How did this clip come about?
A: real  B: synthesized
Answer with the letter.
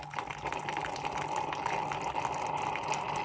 A